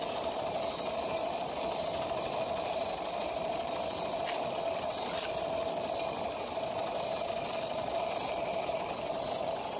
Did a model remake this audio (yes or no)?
no